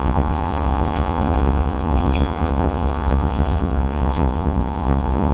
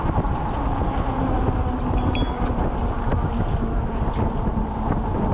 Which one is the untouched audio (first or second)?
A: second